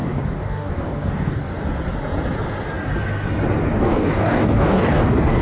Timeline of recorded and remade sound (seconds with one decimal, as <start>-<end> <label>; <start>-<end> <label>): 0.0-1.5 remade; 1.5-3.8 recorded; 3.8-5.4 remade